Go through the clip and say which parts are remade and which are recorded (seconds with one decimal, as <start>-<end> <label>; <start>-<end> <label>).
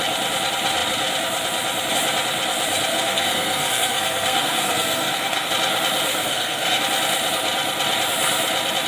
0.0-2.9 recorded; 2.9-5.5 remade; 5.5-6.1 recorded; 6.1-6.8 remade; 6.8-8.9 recorded